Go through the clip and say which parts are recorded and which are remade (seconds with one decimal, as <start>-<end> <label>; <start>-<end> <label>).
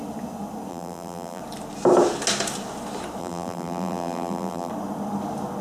0.0-0.7 recorded; 0.7-1.4 remade; 1.4-3.2 recorded; 3.2-4.7 remade; 4.7-5.6 recorded